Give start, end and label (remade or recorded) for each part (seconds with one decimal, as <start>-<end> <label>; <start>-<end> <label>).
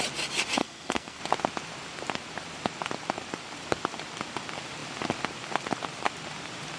0.0-0.6 recorded; 0.6-1.2 remade; 1.2-6.8 recorded